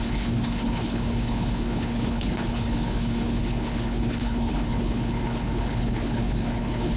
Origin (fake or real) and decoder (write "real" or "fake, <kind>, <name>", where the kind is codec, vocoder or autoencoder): fake, codec, HILCodec